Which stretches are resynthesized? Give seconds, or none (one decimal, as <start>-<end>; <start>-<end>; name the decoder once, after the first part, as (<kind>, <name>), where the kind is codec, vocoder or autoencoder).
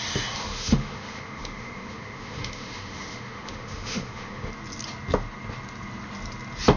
0.4-4.5 (autoencoder, DAC-VAE)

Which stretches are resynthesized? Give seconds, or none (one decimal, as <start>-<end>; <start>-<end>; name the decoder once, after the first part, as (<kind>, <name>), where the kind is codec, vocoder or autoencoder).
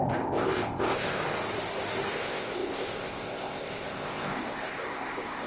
0.0-1.2 (codec, ZipCodec); 2.1-5.5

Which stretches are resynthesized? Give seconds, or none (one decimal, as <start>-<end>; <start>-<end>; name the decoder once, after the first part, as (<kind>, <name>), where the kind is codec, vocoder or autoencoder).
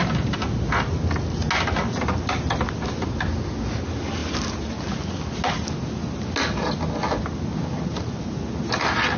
none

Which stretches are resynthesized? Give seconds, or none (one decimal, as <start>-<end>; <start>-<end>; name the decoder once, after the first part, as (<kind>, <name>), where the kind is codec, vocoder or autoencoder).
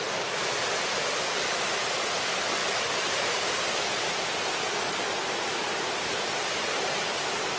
none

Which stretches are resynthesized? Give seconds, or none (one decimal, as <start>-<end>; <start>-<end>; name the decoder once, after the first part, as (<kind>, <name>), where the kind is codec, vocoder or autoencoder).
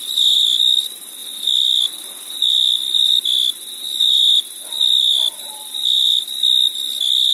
none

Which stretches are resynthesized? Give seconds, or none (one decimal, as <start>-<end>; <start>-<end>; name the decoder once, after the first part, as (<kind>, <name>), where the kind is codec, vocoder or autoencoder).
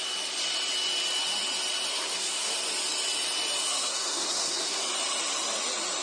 1.9-2.5 (codec, SNAC); 3.7-4.8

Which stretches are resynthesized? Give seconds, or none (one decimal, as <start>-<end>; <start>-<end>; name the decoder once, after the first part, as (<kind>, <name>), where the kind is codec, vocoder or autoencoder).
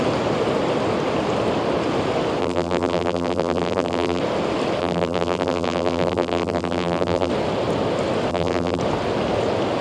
2.4-4.2 (vocoder, BigVGAN v2); 4.8-7.3; 8.3-8.8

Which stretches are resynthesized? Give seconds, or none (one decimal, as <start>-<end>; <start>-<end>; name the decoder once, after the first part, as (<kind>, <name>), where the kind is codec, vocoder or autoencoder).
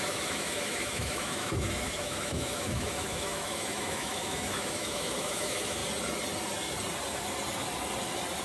0.0-5.8 (autoencoder, DAC-VAE)